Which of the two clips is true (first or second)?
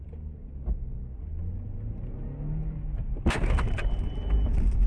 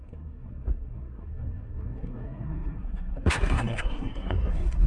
first